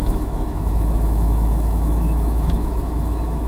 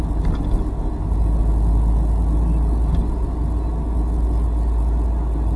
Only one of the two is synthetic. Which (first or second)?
first